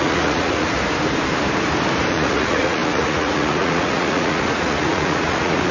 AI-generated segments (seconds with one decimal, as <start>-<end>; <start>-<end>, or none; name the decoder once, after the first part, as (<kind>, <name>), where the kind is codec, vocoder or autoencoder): 0.0-0.8 (vocoder, Vocos); 2.1-5.7